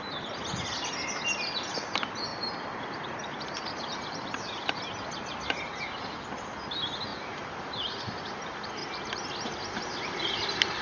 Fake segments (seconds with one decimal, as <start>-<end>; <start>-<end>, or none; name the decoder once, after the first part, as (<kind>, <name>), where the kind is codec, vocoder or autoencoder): 2.3-4.7 (vocoder, BigVGAN v2); 7.1-8.2